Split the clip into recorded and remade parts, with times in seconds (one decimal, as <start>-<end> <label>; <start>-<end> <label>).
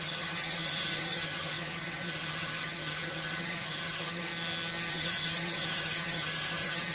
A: 0.0-4.3 remade; 4.3-4.9 recorded; 4.9-6.9 remade